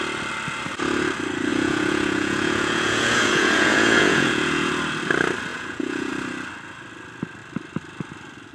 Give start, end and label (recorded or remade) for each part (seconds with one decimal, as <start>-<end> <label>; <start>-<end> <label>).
0.0-1.5 recorded; 1.5-4.7 remade; 4.7-5.5 recorded; 5.5-6.1 remade; 6.1-8.5 recorded